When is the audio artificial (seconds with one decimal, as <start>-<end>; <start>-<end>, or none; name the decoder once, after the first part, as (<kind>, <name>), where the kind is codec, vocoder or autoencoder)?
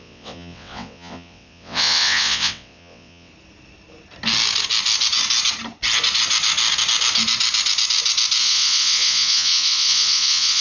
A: 0.0-3.3 (vocoder, WaveNeXt); 8.4-10.6